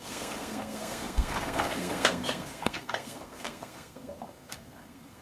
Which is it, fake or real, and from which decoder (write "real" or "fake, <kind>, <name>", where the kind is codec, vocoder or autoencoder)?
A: fake, codec, SNAC